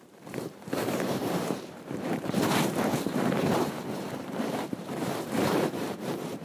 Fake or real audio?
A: fake